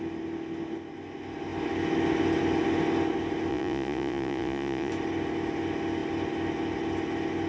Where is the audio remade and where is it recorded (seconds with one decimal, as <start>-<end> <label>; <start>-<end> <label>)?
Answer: 0.0-3.5 recorded; 3.5-4.9 remade; 4.9-7.5 recorded